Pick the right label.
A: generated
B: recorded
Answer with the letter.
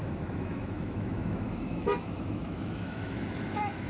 A